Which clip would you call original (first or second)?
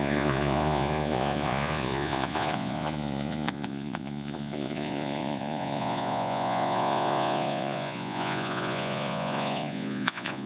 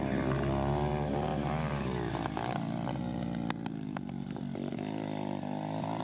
second